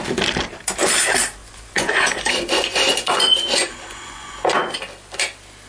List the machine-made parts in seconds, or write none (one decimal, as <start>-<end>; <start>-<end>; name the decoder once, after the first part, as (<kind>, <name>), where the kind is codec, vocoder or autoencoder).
1.4-4.8 (vocoder, Vocos)

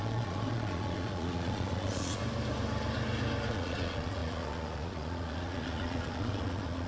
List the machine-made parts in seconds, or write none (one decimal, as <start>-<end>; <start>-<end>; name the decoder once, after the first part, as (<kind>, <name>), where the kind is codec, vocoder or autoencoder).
0.0-2.2 (vocoder, Vocos); 3.5-6.9